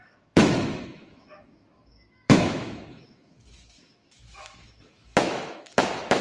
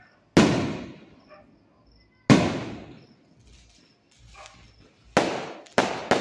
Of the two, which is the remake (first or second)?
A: first